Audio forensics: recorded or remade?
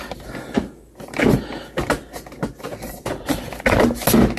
recorded